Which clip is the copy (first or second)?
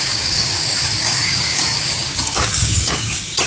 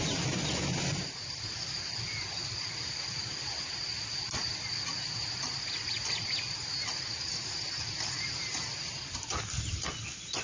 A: first